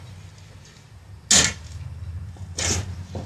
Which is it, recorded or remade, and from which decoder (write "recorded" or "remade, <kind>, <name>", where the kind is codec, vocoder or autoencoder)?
recorded